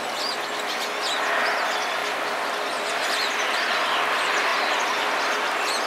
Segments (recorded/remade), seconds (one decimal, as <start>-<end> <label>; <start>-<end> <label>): 0.0-2.0 recorded; 2.0-3.7 remade; 3.7-5.9 recorded